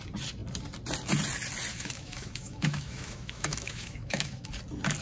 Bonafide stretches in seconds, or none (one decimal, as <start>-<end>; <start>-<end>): 0.0-1.7; 4.5-5.0